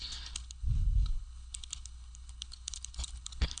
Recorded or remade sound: remade